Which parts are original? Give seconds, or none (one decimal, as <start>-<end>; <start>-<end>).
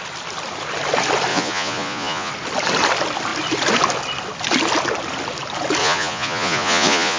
0.0-1.3; 2.3-5.8